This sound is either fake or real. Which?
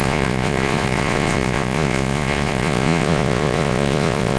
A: fake